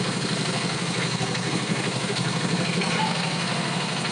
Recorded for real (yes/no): no